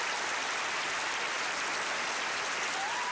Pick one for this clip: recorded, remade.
recorded